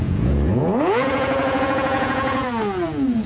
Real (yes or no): no